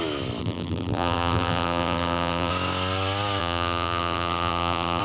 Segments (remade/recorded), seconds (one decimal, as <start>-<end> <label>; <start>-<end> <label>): 0.0-0.4 recorded; 0.4-2.5 remade; 2.5-3.4 recorded; 3.4-5.0 remade